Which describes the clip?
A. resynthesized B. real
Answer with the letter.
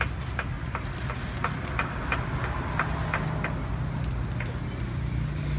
B